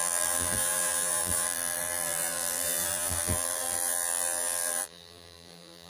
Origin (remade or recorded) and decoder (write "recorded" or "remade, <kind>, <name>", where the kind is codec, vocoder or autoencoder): remade, vocoder, BigVGAN v2